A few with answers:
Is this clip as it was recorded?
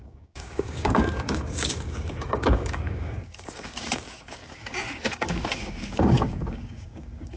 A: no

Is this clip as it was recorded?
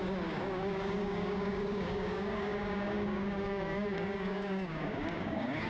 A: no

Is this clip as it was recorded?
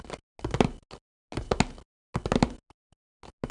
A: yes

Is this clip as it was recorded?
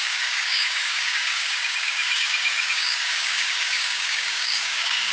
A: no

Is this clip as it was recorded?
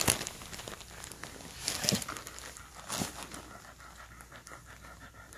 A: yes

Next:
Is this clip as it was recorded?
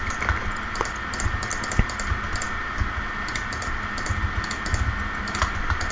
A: yes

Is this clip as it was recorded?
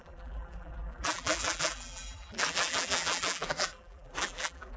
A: no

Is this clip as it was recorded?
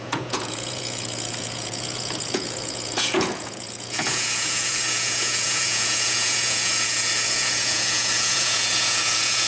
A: no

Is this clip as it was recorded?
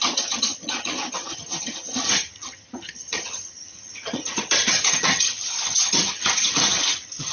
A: no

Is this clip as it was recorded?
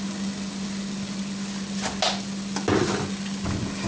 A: yes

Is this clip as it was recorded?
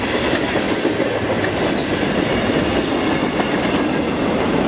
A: yes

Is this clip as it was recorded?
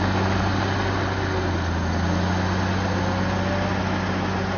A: yes